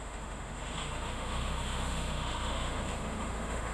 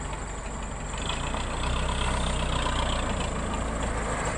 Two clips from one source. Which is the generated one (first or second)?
first